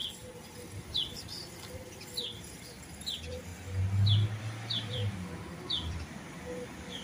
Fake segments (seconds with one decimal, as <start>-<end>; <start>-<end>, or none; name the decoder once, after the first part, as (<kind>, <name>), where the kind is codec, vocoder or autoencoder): 0.8-3.5 (vocoder, BigVGAN v2); 4.4-7.0